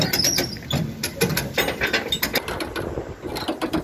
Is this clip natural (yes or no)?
yes